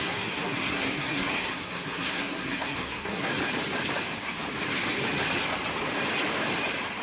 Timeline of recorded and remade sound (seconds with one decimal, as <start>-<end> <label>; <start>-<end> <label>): 0.0-3.3 remade; 3.3-7.0 recorded

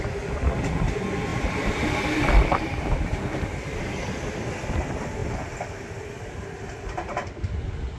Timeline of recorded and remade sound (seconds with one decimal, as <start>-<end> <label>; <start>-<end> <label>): 0.0-1.3 recorded; 1.3-3.8 remade; 3.8-8.0 recorded

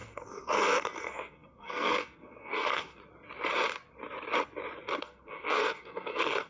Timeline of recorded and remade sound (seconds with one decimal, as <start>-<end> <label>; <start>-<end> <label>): 0.0-3.0 remade; 3.0-5.0 recorded; 5.0-6.5 remade

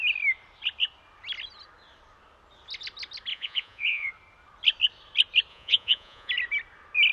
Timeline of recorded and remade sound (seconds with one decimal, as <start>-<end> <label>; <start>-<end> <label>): 0.0-3.3 recorded; 3.3-4.1 remade; 4.1-5.5 recorded; 5.5-6.3 remade; 6.3-7.1 recorded

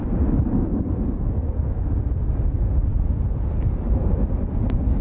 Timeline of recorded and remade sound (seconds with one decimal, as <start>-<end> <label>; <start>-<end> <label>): 0.0-5.0 recorded